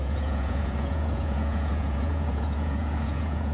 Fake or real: fake